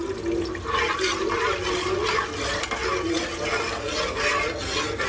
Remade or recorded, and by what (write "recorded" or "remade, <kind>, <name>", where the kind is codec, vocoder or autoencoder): recorded